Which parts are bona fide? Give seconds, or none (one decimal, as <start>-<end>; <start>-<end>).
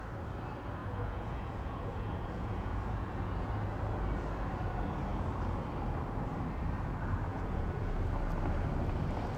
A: 0.0-0.8; 3.5-7.3; 7.9-9.4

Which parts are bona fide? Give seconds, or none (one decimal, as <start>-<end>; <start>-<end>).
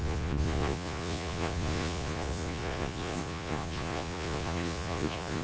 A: none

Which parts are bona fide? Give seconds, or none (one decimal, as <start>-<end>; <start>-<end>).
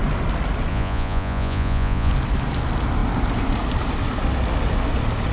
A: 0.0-0.7; 2.1-5.3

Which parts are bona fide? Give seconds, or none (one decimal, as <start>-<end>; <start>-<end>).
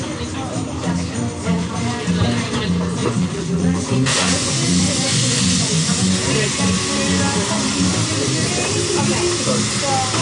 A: 0.0-3.0; 6.1-10.2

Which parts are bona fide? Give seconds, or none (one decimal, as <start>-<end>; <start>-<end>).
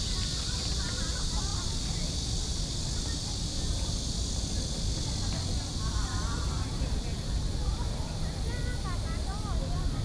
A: 0.0-10.0